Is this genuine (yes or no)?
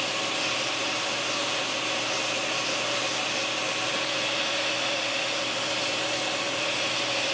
yes